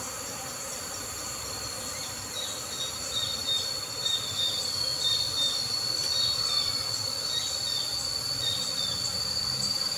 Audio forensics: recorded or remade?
remade